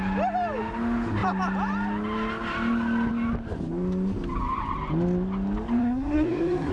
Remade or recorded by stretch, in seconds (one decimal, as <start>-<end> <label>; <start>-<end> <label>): 0.0-5.8 recorded; 5.8-6.7 remade